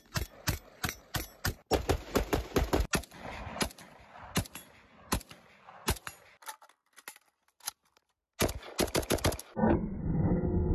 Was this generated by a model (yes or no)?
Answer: no